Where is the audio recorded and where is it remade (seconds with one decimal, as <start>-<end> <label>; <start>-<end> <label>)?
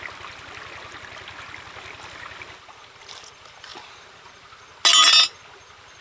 0.0-6.0 recorded